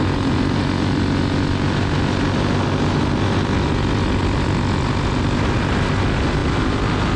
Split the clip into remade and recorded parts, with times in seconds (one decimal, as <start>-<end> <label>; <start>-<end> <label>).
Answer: 0.0-7.2 recorded

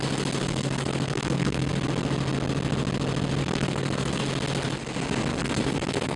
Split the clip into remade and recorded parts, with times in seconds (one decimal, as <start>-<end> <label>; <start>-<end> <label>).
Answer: 0.0-0.4 recorded; 0.4-1.7 remade; 1.7-3.4 recorded; 3.4-4.2 remade; 4.2-5.3 recorded; 5.3-6.2 remade

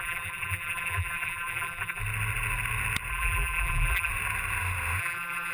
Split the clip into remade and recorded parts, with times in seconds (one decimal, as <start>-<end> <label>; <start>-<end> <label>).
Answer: 0.0-2.0 remade; 2.0-3.1 recorded; 3.1-4.1 remade; 4.1-5.0 recorded; 5.0-5.5 remade

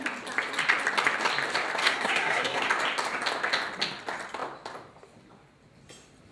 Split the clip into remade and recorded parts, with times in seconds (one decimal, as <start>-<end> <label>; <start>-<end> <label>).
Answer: 0.0-1.8 recorded; 1.8-2.7 remade; 2.7-6.3 recorded

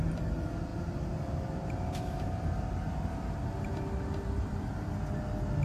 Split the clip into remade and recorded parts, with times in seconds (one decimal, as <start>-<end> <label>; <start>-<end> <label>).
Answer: 0.0-5.6 recorded